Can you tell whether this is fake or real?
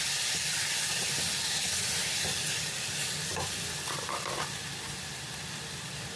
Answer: fake